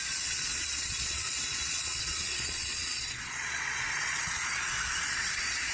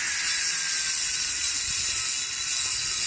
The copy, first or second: first